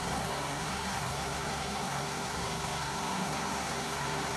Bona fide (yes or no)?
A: no